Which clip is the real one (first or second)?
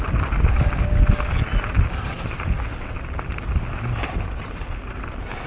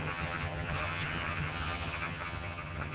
first